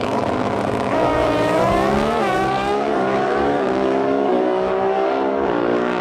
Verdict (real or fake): fake